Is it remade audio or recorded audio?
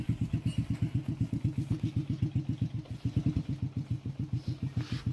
recorded